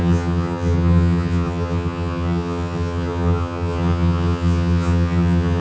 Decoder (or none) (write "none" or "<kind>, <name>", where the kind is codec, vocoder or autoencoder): vocoder, HiFi-GAN